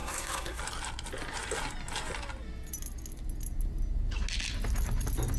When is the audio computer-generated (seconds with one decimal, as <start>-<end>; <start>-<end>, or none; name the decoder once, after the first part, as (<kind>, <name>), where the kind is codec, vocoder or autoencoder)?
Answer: 0.0-0.6 (codec, SNAC)